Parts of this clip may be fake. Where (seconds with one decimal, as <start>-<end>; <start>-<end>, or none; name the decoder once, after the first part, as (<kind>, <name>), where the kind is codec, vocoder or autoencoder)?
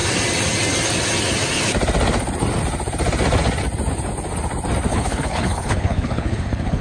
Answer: 4.9-6.8 (codec, HILCodec)